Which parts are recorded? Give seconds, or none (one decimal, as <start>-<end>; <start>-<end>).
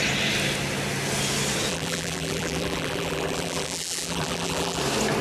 0.0-1.7; 4.8-5.2